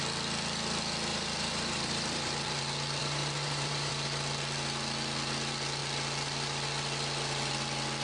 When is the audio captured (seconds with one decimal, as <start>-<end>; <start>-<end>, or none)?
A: 0.0-1.1; 2.6-3.0; 3.9-8.0